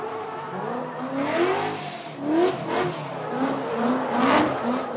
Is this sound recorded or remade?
recorded